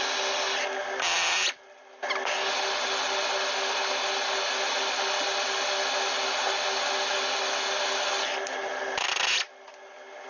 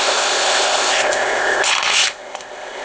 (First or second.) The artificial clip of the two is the second